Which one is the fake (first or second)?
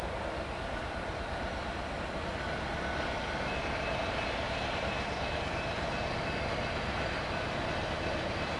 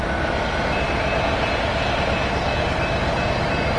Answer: first